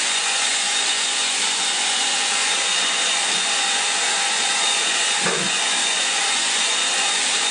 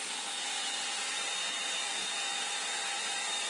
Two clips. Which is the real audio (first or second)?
second